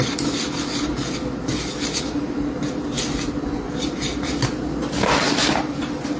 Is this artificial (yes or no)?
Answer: no